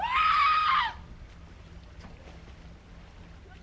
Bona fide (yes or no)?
yes